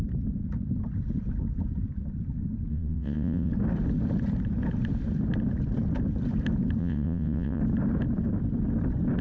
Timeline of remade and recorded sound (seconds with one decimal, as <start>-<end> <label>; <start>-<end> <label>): 0.0-2.7 recorded; 2.7-3.5 remade; 3.5-6.8 recorded; 6.8-7.6 remade; 7.6-9.2 recorded